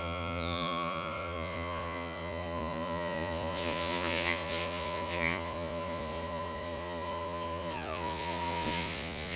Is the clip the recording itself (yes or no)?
no